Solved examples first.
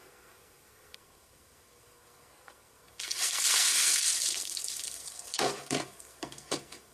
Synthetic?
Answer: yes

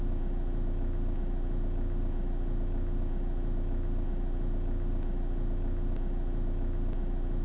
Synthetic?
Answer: no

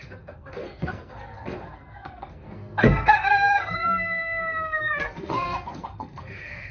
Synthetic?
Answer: yes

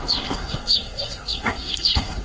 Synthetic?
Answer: yes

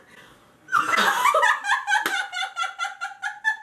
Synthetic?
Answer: no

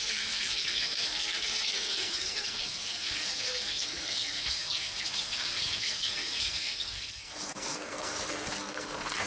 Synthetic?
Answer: yes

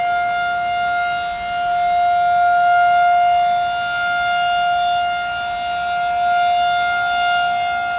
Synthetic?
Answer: no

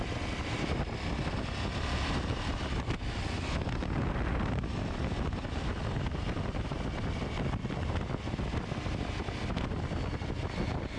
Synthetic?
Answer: no